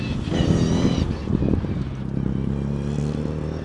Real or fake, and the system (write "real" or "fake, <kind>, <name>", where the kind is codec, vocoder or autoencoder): real